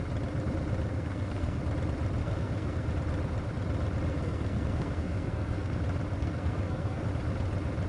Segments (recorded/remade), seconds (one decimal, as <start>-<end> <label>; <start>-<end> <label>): 0.0-0.9 recorded; 0.9-1.6 remade; 1.6-2.2 recorded; 2.2-2.9 remade; 2.9-4.1 recorded; 4.1-5.8 remade; 5.8-6.2 recorded; 6.2-7.0 remade; 7.0-7.9 recorded